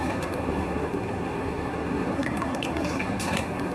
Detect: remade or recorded remade